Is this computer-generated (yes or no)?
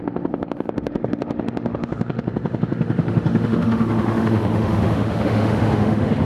yes